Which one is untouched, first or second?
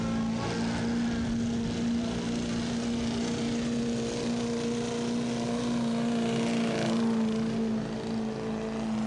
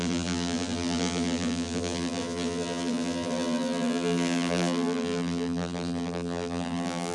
first